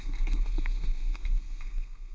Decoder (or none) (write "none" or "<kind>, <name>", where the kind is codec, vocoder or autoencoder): codec, SNAC